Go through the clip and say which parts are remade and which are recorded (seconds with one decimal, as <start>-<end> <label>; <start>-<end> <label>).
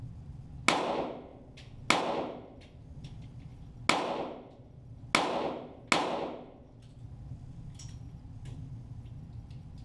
0.0-9.8 recorded